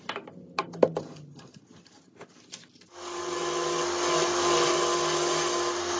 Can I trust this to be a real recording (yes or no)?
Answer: yes